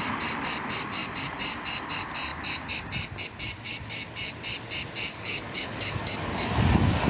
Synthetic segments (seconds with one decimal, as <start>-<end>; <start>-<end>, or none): 5.1-6.2